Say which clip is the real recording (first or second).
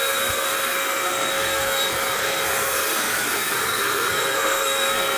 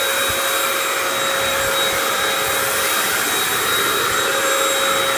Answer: second